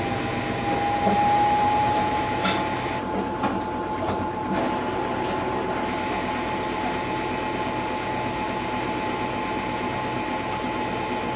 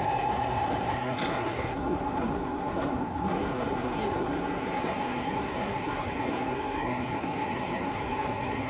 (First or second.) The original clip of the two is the first